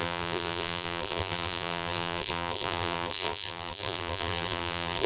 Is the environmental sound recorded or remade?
remade